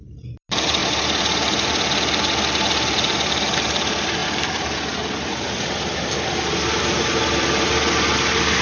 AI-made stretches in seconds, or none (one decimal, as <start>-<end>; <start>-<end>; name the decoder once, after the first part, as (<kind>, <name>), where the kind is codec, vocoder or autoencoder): none